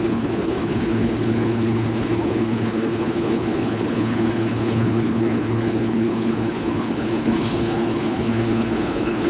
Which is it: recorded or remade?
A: remade